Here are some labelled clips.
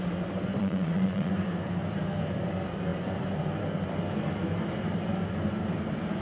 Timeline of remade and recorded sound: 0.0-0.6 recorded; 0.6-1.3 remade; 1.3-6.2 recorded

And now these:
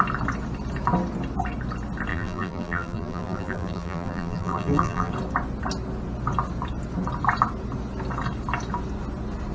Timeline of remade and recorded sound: 0.0-2.1 recorded; 2.1-5.1 remade; 5.1-9.5 recorded

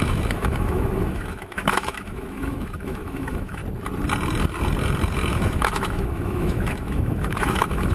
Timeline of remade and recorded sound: 0.0-3.6 remade; 3.6-5.3 recorded; 5.3-7.9 remade

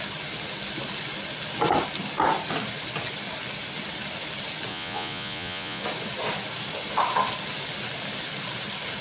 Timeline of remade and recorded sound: 0.0-4.7 recorded; 4.7-5.8 remade; 5.8-9.0 recorded